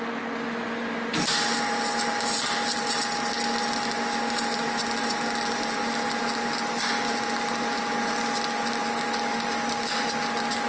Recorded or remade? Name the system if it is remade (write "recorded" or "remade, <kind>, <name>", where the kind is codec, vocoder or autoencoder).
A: recorded